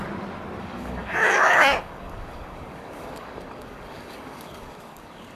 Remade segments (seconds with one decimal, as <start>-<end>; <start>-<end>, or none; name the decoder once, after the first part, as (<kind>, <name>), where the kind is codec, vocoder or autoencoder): 0.6-5.4 (codec, DAC)